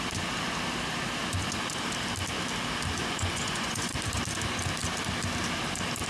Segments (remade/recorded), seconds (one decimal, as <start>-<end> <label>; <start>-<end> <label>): 0.0-3.0 recorded; 3.0-3.9 remade; 3.9-6.1 recorded